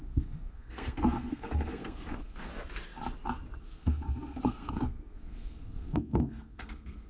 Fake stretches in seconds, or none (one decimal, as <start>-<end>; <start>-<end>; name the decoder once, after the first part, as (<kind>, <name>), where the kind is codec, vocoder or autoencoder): 0.0-2.5 (codec, SNAC); 3.6-7.1